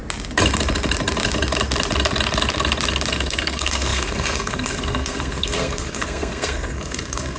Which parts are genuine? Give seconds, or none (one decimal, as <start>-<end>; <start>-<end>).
0.0-3.1